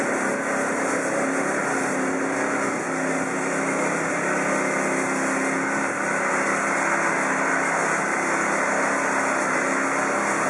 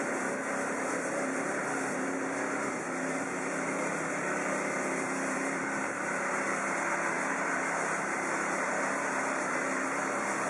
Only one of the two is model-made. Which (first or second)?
second